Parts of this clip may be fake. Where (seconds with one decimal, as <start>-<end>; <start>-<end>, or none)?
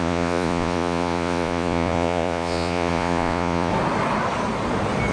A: 0.0-3.7